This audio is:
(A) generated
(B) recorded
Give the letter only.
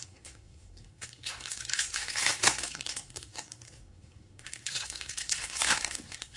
A